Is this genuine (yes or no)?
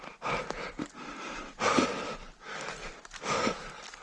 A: yes